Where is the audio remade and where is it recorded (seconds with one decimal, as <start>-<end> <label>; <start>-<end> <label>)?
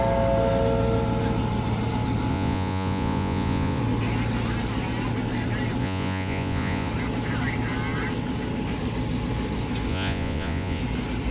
0.0-2.3 recorded; 2.3-3.8 remade; 3.8-5.8 recorded; 5.8-6.9 remade; 6.9-9.9 recorded; 9.9-10.8 remade; 10.8-11.3 recorded